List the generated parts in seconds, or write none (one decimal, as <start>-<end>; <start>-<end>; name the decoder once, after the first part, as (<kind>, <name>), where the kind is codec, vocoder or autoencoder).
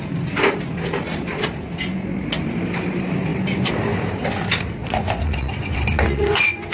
4.8-6.7 (vocoder, Vocos)